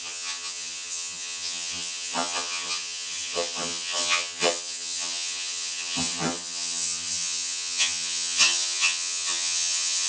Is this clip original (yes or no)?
no